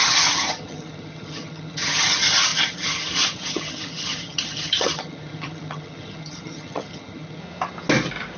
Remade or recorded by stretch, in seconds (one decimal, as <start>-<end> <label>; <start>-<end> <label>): 0.0-7.4 remade; 7.4-8.4 recorded